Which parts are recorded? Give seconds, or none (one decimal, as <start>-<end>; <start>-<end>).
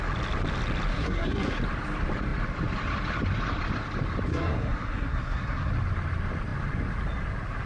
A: 0.0-0.9; 1.6-4.3; 5.7-7.7